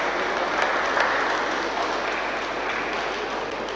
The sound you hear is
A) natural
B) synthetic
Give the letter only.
A